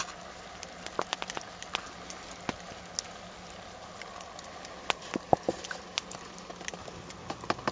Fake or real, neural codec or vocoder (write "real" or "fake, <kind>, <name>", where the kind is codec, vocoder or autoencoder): real